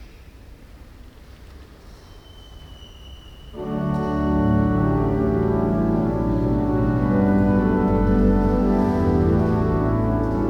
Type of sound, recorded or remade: recorded